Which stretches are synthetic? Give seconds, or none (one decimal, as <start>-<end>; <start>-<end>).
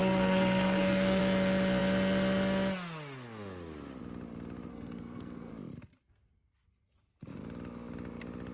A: 0.0-1.2; 4.7-5.5